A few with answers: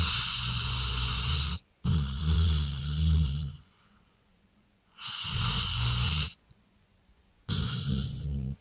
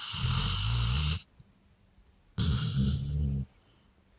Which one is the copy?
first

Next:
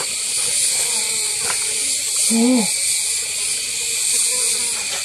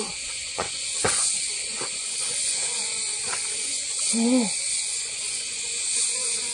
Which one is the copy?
second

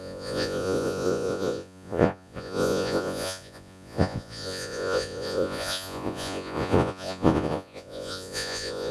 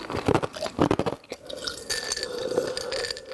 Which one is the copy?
first